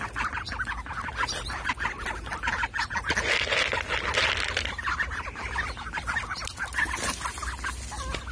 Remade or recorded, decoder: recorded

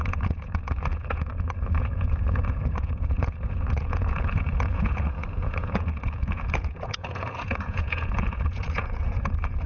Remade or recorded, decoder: remade, vocoder, Vocos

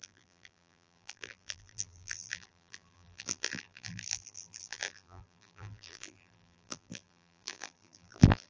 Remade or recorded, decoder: remade, vocoder, BigVGAN v2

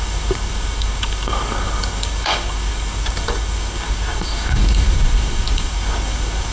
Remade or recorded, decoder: remade, codec, DAC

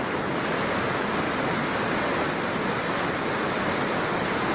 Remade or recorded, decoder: recorded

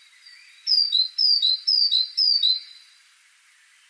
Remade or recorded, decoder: remade, vocoder, BigVGAN v2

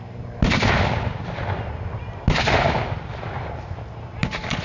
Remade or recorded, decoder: recorded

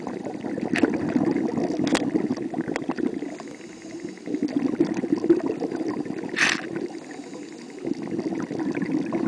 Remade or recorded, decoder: recorded